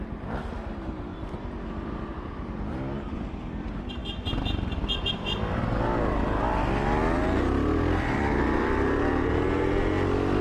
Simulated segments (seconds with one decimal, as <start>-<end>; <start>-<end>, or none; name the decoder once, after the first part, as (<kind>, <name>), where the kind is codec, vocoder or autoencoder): none